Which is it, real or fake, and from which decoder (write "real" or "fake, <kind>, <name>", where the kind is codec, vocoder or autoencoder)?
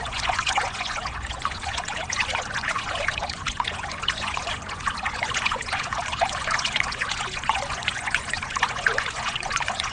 fake, vocoder, Vocos